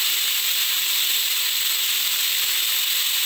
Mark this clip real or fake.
fake